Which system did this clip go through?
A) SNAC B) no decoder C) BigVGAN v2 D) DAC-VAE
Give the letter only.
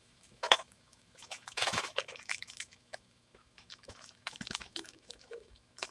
D